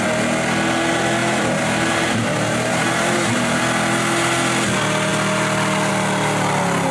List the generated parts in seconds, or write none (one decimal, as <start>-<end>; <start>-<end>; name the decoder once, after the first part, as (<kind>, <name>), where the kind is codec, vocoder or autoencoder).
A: 1.2-3.6 (vocoder, BigVGAN v2)